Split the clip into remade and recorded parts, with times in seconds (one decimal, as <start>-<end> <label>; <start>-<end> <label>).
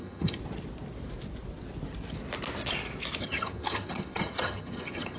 0.0-0.4 remade; 0.4-3.2 recorded; 3.2-5.2 remade